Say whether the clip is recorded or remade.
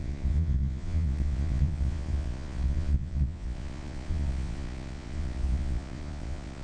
remade